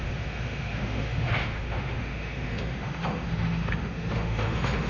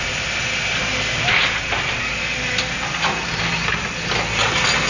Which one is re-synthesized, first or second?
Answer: first